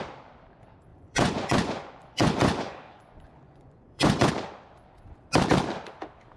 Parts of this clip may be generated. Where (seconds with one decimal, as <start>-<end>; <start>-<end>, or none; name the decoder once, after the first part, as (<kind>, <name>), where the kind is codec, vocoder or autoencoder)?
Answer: 0.9-4.3 (vocoder, Vocos)